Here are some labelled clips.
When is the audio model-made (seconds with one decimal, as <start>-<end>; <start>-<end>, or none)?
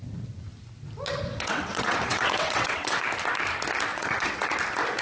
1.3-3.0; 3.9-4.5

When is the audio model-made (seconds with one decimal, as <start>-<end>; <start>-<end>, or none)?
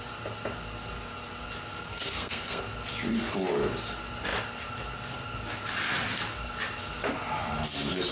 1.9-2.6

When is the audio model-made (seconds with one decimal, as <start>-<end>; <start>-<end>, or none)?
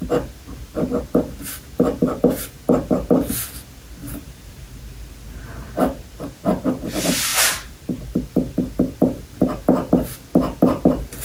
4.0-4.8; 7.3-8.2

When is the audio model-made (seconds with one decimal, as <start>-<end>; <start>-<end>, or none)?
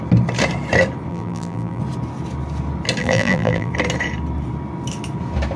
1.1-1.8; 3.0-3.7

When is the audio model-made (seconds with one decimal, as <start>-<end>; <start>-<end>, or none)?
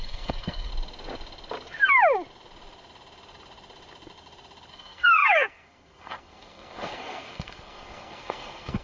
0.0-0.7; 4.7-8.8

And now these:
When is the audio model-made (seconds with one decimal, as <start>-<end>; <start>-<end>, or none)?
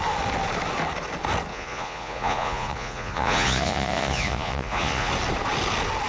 1.5-5.1